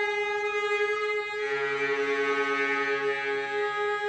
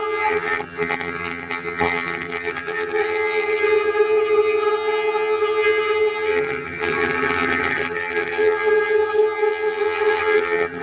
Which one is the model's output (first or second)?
second